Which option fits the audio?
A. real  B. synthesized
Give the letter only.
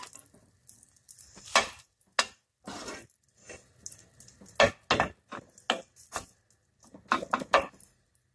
A